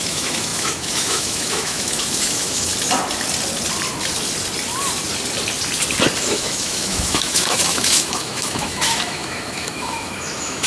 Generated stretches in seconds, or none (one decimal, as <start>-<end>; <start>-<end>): 0.0-2.7; 6.2-10.7